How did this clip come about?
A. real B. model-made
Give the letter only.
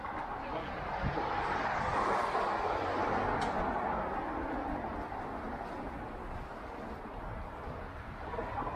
A